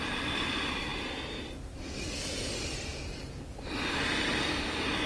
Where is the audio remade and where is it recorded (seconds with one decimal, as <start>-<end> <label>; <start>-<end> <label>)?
0.0-0.9 remade; 0.9-2.4 recorded; 2.4-2.9 remade; 2.9-3.9 recorded; 3.9-5.1 remade